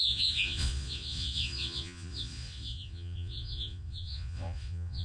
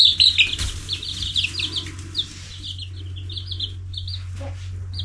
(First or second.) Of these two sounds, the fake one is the first